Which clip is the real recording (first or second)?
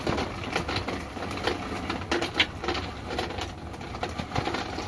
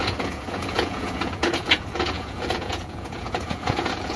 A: first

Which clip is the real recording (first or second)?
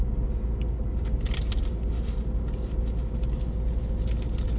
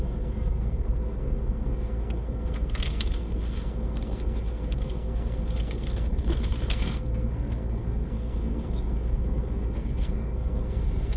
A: first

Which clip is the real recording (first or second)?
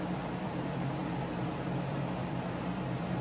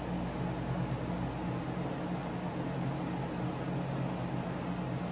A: second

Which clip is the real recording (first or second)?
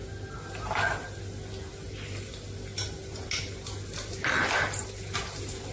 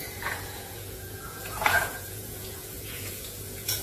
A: first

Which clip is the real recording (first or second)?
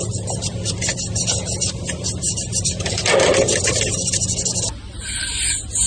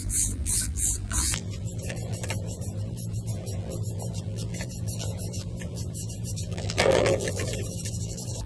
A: first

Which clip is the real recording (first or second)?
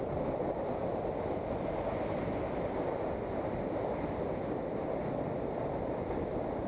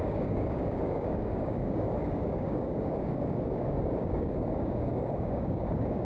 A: first